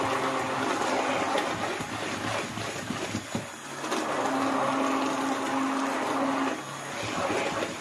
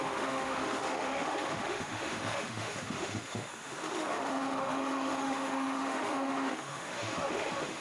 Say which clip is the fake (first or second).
second